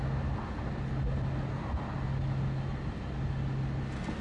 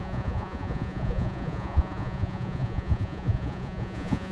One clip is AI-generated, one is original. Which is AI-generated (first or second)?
second